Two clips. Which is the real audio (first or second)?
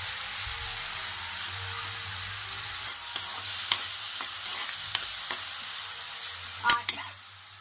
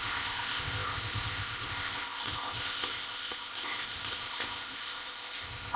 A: first